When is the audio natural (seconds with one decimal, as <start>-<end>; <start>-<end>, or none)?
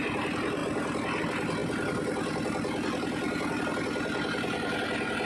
0.0-5.3